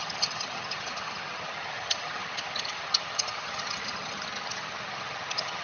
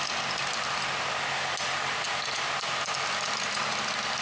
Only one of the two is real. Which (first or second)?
second